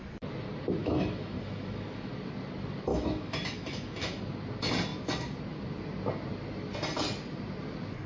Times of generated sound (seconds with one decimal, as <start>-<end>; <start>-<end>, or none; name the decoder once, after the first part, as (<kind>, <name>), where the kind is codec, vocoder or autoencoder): 0.8-2.1 (autoencoder, DAC-VAE); 2.9-4.2

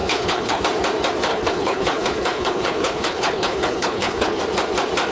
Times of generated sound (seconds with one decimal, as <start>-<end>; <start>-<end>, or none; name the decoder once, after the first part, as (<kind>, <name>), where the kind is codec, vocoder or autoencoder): 0.0-0.6 (codec, HILCodec); 1.3-4.4